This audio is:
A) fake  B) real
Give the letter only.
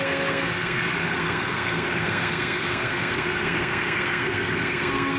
A